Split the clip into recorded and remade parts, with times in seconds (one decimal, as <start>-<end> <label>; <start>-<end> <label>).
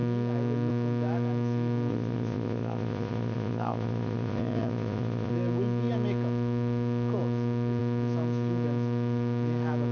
0.0-1.9 recorded; 1.9-5.3 remade; 5.3-9.9 recorded